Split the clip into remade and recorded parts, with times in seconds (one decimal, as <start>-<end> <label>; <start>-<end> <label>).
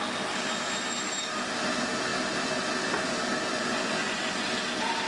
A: 0.0-3.5 recorded; 3.5-4.5 remade; 4.5-5.1 recorded